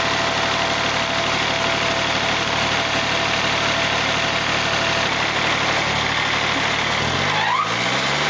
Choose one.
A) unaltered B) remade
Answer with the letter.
A